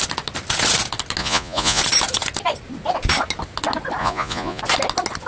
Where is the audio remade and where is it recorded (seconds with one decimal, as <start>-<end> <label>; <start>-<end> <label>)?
0.0-1.2 recorded; 1.2-1.8 remade; 1.8-4.0 recorded; 4.0-4.6 remade; 4.6-5.3 recorded